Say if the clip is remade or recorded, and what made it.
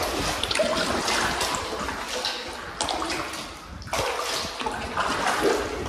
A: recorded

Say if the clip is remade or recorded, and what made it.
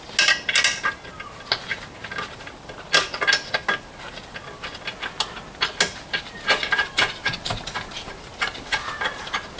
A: recorded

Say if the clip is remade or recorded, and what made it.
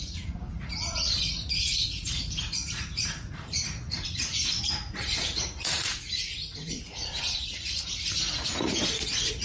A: remade, vocoder, Vocos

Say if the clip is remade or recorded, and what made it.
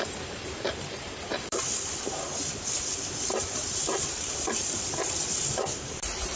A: remade, vocoder, BigVGAN v2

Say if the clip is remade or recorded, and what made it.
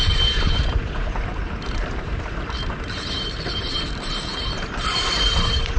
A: remade, vocoder, BigVGAN v2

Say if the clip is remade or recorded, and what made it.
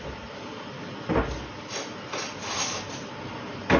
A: recorded